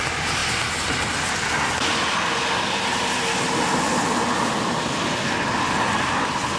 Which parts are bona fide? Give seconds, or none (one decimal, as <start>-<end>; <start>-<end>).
0.0-6.6